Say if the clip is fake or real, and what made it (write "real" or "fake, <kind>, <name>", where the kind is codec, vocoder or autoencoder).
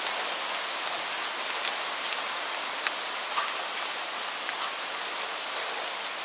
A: real